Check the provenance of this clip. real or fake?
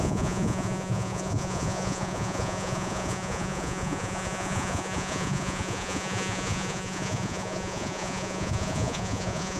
fake